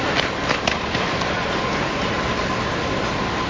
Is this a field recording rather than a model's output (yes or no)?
yes